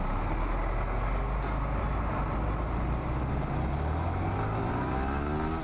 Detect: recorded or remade recorded